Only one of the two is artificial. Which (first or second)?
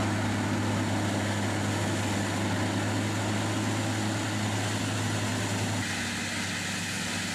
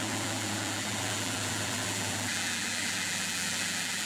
second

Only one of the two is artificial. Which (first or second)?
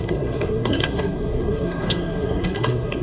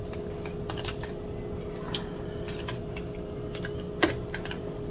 first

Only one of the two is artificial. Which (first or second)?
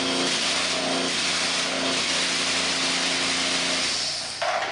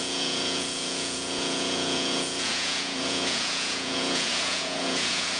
second